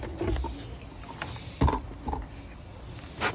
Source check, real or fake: real